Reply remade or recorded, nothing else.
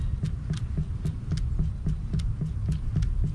recorded